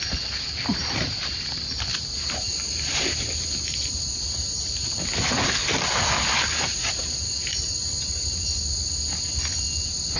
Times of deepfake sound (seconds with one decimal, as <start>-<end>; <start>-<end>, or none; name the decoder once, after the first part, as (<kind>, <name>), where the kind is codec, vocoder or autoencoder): 1.9-5.3 (vocoder, BigVGAN v2); 7.5-8.7